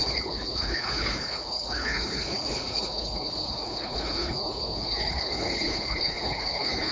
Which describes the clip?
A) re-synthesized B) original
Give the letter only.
A